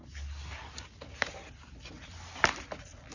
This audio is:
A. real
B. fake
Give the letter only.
A